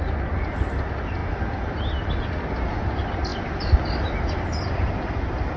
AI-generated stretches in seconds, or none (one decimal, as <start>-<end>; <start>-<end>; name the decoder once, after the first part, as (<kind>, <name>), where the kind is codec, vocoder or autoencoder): none